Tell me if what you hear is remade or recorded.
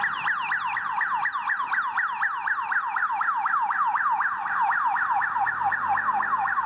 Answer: recorded